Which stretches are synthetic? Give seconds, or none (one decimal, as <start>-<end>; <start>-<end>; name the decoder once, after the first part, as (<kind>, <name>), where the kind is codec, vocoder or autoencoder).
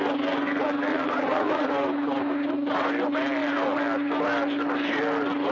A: 0.9-1.7 (vocoder, Vocos)